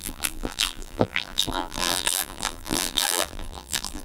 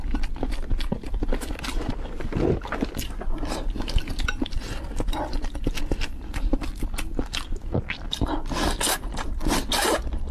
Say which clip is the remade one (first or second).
first